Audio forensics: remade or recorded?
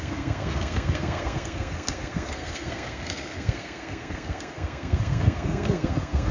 remade